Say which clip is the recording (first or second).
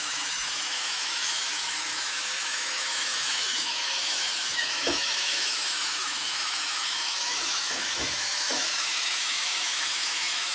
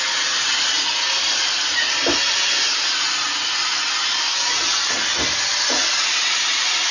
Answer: second